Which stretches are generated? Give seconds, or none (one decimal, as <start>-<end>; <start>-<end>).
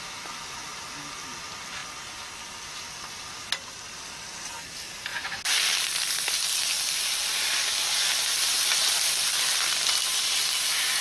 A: none